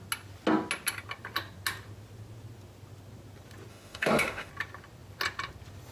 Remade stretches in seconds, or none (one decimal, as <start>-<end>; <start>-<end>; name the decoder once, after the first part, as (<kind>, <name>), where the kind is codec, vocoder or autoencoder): 3.7-4.5 (autoencoder, DAC-VAE)